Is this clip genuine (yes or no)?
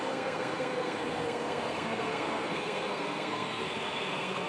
no